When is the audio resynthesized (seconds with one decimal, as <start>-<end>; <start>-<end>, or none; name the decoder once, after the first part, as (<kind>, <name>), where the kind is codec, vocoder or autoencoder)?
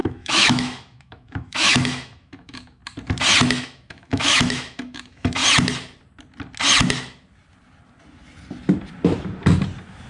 0.0-2.8 (autoencoder, DAC-VAE); 3.6-5.4